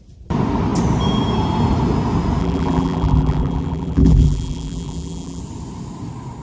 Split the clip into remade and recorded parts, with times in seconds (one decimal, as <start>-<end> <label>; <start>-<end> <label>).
0.0-2.4 recorded; 2.4-5.4 remade; 5.4-6.4 recorded

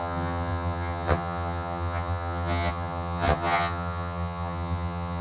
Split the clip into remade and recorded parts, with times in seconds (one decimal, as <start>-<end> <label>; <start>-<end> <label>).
0.0-5.2 remade

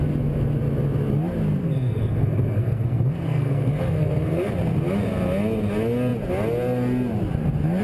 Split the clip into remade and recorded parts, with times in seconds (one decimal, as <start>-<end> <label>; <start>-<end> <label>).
0.0-1.6 recorded; 1.6-4.5 remade; 4.5-7.8 recorded

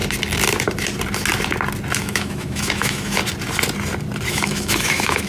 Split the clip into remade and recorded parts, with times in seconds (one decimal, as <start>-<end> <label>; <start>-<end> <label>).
0.0-2.0 recorded; 2.0-3.2 remade; 3.2-4.3 recorded; 4.3-5.3 remade

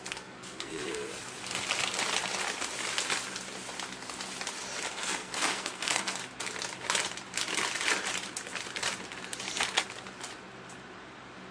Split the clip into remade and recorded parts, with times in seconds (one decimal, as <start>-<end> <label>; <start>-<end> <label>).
0.0-1.1 remade; 1.1-4.9 recorded; 4.9-6.2 remade; 6.2-11.5 recorded

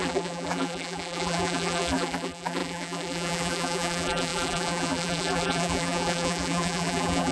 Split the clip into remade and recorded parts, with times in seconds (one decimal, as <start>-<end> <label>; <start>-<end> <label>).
0.0-7.3 remade

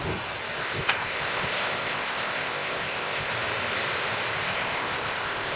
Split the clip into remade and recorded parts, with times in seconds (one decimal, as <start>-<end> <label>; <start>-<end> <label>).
0.0-0.6 recorded; 0.6-3.3 remade; 3.3-4.4 recorded; 4.4-5.6 remade

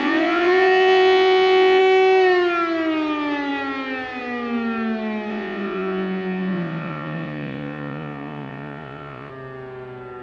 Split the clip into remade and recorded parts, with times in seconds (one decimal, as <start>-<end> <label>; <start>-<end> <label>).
0.0-1.8 remade; 1.8-5.3 recorded; 5.3-9.3 remade; 9.3-10.2 recorded